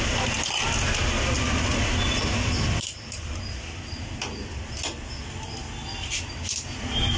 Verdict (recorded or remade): recorded